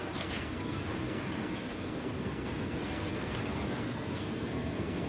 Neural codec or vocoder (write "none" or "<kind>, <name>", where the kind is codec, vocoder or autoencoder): codec, SNAC